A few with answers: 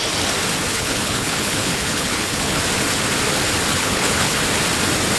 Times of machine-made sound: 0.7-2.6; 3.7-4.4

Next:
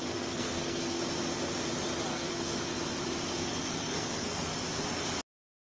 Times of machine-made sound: 0.0-1.0; 2.1-2.7; 3.3-4.5